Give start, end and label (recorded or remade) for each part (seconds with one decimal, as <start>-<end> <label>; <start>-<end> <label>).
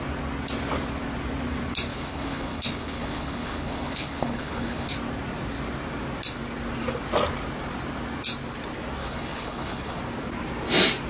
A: 0.0-1.9 recorded; 1.9-4.9 remade; 4.9-9.0 recorded; 9.0-10.0 remade; 10.0-11.1 recorded